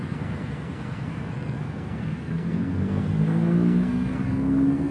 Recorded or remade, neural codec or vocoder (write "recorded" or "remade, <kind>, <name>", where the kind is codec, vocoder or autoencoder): remade, codec, SNAC